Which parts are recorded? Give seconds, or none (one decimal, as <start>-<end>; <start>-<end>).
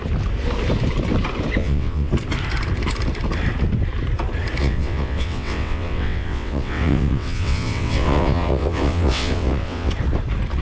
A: 0.0-1.6; 2.1-4.6; 9.9-10.6